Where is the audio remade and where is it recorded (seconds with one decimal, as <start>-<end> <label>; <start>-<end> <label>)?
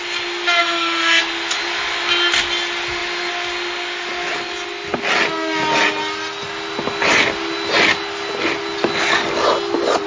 0.0-0.6 recorded; 0.6-1.2 remade; 1.2-10.1 recorded